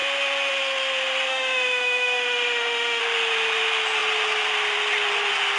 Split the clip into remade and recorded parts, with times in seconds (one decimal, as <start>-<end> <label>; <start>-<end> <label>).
0.0-1.3 recorded; 1.3-3.0 remade; 3.0-5.6 recorded

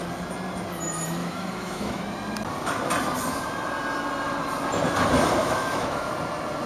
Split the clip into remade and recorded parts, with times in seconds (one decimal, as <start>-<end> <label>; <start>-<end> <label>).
0.0-1.2 recorded; 1.2-2.0 remade; 2.0-5.4 recorded; 5.4-6.1 remade; 6.1-6.7 recorded

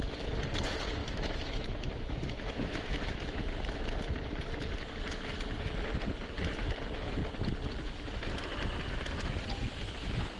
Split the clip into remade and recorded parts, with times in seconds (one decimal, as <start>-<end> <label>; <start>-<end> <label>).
0.0-1.0 recorded; 1.0-3.4 remade; 3.4-10.4 recorded

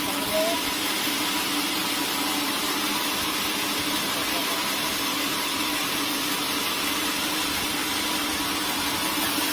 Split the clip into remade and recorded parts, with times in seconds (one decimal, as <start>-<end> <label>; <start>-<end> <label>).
0.0-9.5 recorded

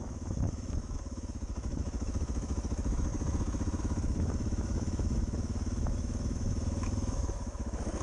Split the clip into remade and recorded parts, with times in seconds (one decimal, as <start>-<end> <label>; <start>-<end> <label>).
0.0-3.1 remade; 3.1-3.8 recorded; 3.8-8.0 remade

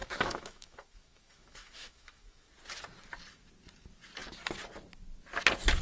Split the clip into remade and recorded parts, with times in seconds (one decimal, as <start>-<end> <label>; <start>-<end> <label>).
0.0-2.5 remade; 2.5-5.8 recorded